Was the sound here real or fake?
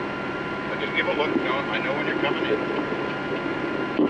real